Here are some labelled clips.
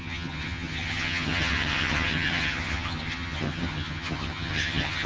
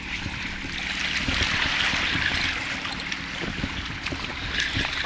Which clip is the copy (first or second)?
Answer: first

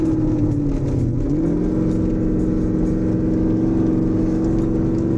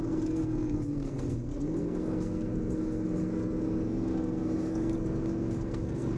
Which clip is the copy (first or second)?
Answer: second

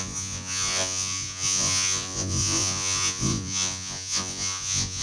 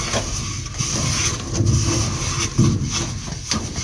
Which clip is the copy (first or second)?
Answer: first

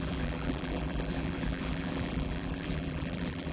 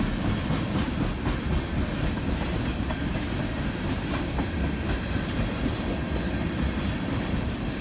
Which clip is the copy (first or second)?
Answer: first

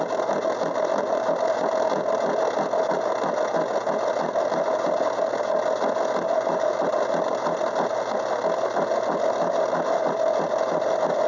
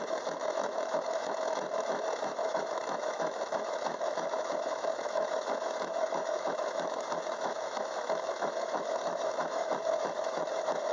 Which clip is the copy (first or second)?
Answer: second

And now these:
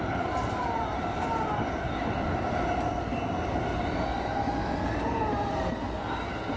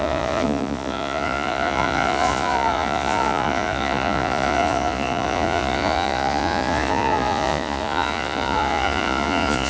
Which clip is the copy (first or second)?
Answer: second